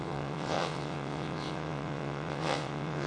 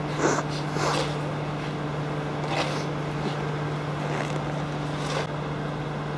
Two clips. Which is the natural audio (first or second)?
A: second